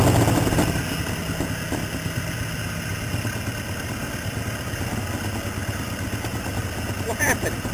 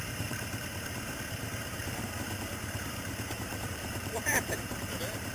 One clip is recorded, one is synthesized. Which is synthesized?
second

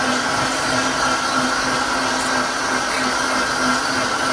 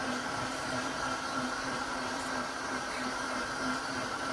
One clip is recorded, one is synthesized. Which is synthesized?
second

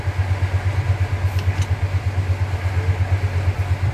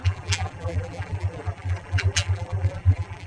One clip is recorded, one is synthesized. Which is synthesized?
second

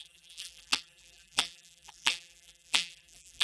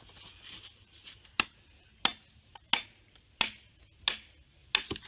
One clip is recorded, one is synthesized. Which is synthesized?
first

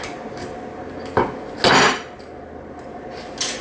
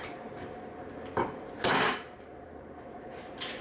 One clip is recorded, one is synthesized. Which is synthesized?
second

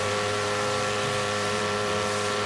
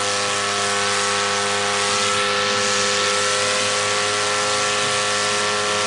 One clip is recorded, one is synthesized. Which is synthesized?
first